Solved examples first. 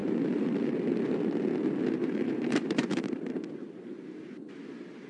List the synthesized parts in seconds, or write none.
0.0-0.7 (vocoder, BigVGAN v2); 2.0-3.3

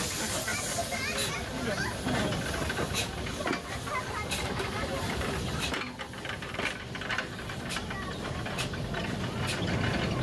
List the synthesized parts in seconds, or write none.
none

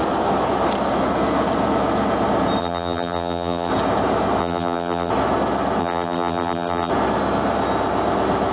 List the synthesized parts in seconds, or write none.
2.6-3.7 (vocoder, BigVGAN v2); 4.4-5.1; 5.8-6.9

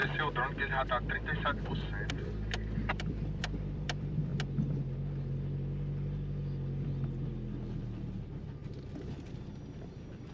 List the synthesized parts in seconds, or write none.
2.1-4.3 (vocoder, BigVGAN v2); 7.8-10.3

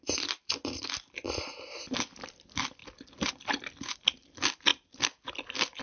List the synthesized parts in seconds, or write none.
none

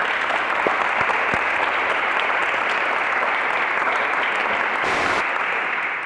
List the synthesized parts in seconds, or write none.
0.0-6.1 (vocoder, BigVGAN v2)

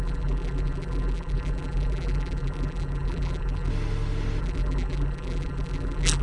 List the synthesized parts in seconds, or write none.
0.0-3.7 (vocoder, BigVGAN v2); 4.4-6.2

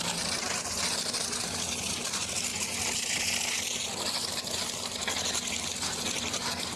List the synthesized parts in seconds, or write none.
none